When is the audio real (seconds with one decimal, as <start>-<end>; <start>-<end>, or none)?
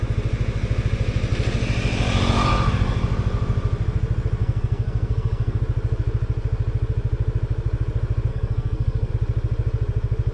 0.0-4.4; 5.6-8.3; 9.1-10.3